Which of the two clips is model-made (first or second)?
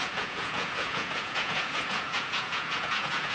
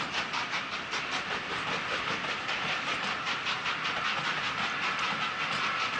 first